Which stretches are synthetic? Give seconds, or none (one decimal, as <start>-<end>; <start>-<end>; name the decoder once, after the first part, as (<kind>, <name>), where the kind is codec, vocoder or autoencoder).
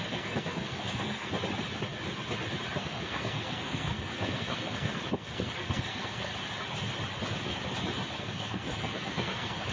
0.0-1.3 (codec, SNAC); 2.8-6.3; 8.2-9.7